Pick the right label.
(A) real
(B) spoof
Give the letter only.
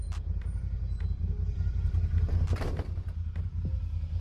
A